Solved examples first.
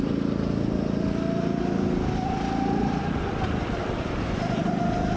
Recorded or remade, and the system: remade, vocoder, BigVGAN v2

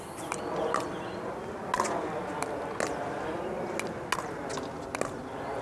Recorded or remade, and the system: recorded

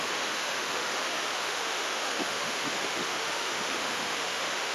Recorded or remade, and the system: remade, autoencoder, DAC-VAE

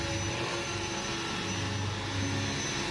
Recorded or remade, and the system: recorded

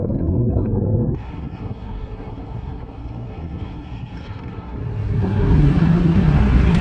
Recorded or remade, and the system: remade, codec, SNAC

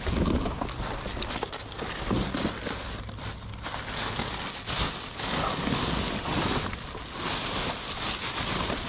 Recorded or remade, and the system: recorded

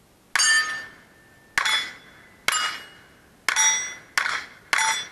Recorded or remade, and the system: recorded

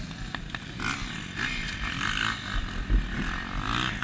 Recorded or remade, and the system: recorded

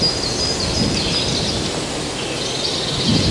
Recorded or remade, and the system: recorded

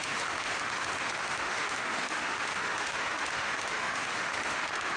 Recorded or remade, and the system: remade, autoencoder, DAC-VAE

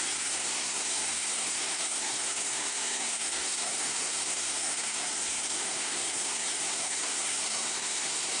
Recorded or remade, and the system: remade, codec, SNAC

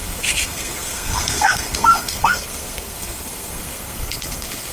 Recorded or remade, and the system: remade, codec, SNAC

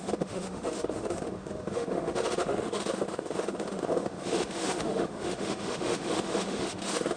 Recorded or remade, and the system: remade, autoencoder, DAC-VAE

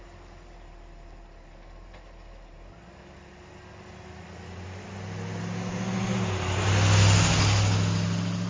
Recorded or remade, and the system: recorded